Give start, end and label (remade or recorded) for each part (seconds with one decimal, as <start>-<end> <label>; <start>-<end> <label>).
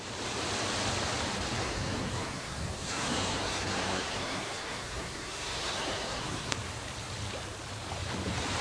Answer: 0.0-1.6 recorded; 1.6-6.5 remade; 6.5-8.6 recorded